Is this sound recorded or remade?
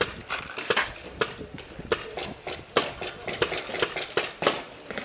recorded